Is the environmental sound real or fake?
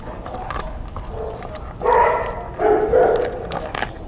real